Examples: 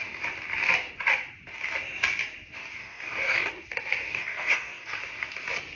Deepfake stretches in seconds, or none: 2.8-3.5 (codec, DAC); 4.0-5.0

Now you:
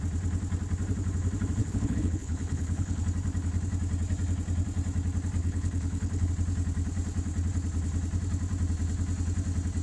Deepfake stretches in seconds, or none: 1.6-3.0 (codec, HILCodec); 5.4-6.3

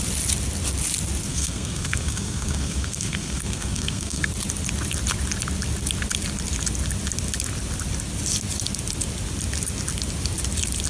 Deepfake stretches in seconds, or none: 1.3-4.3 (codec, SNAC)

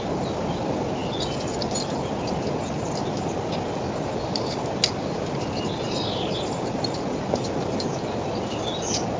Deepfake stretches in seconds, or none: none